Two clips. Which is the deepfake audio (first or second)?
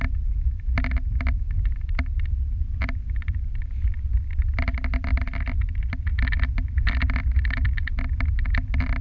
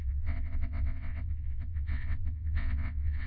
second